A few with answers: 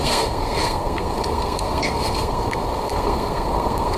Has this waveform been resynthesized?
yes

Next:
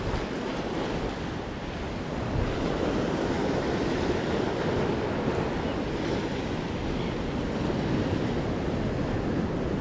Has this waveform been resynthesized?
no